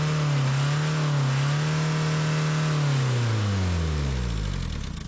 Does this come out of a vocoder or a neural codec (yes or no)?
no